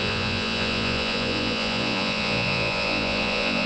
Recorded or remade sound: remade